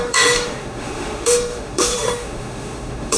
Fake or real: fake